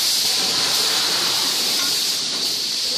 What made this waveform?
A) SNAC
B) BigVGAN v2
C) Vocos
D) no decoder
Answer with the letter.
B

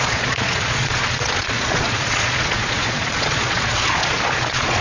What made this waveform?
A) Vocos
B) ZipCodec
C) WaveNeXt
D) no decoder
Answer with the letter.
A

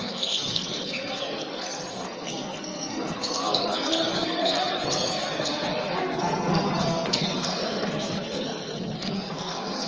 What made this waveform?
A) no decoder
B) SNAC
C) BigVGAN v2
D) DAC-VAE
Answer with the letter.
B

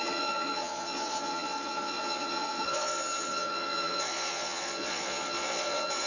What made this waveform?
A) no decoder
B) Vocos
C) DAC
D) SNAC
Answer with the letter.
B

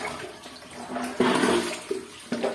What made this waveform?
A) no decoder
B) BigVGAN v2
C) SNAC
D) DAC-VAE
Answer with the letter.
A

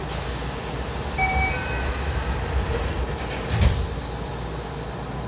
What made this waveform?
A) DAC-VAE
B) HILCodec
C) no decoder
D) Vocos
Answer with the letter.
C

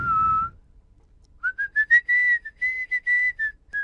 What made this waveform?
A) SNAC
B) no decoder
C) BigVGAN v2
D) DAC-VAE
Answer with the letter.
B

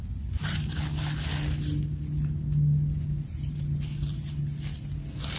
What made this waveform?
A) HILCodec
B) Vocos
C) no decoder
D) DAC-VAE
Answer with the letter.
C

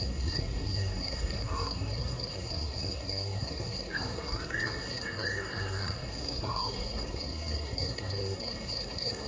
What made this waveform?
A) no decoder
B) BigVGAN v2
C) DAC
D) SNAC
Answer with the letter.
D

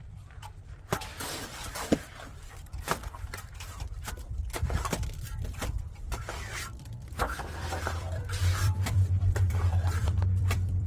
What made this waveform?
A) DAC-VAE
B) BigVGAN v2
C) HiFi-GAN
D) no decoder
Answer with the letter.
B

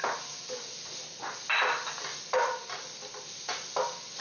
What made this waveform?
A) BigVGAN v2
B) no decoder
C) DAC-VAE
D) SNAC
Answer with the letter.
B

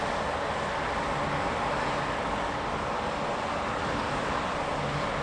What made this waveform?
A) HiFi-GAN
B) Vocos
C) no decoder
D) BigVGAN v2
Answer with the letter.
C